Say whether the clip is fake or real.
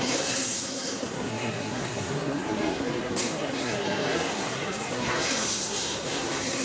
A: fake